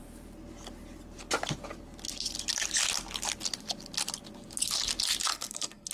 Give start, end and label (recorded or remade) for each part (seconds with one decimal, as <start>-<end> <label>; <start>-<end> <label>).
0.0-5.3 recorded; 5.3-5.9 remade

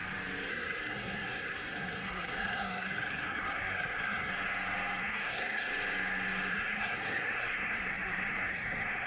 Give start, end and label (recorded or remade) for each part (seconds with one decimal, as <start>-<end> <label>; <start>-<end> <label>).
0.0-0.5 recorded; 0.5-4.3 remade; 4.3-5.0 recorded; 5.0-5.7 remade; 5.7-6.5 recorded; 6.5-9.1 remade

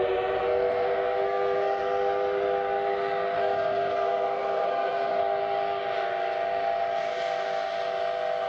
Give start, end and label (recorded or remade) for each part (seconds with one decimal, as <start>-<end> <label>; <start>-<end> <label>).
0.0-0.4 recorded; 0.4-1.8 remade; 1.8-3.4 recorded; 3.4-5.2 remade; 5.2-8.5 recorded

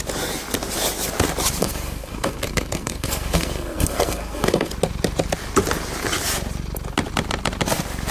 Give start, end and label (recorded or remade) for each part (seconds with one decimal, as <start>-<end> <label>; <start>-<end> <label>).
0.0-1.6 recorded; 1.6-4.7 remade; 4.7-8.1 recorded

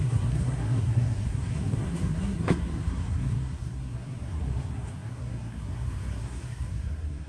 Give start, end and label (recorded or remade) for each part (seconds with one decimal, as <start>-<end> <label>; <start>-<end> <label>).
0.0-7.3 remade

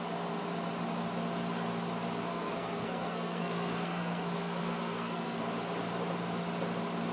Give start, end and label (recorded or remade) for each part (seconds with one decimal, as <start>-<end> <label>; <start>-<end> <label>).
0.0-2.3 recorded; 2.3-5.4 remade; 5.4-7.1 recorded

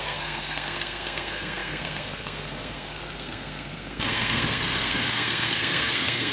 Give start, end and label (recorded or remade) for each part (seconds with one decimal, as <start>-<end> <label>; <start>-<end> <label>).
0.0-6.3 remade